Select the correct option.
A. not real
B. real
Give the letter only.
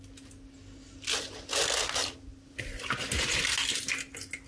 B